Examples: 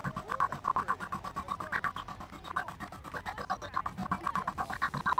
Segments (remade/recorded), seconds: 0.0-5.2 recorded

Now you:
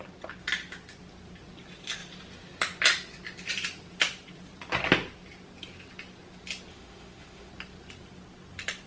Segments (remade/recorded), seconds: 0.0-6.7 recorded; 6.7-7.5 remade; 7.5-8.9 recorded

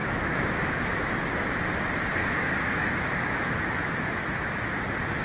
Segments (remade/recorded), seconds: 0.0-0.7 remade; 0.7-2.2 recorded; 2.2-4.7 remade; 4.7-5.2 recorded

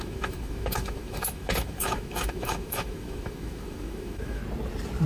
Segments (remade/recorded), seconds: 0.0-4.4 remade; 4.4-5.1 recorded

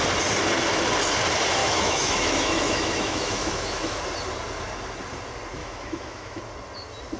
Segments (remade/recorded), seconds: 0.0-1.6 recorded; 1.6-4.0 remade; 4.0-5.6 recorded; 5.6-6.4 remade; 6.4-7.2 recorded

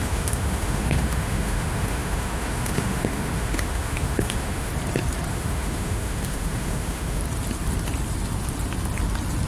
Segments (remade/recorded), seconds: 0.0-4.7 remade; 4.7-5.3 recorded; 5.3-7.2 remade; 7.2-9.5 recorded